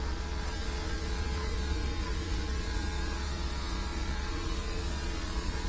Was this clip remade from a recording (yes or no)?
yes